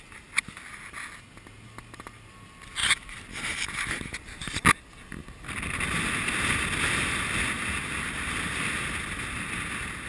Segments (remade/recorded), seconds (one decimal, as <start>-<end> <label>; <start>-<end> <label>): 0.0-10.1 recorded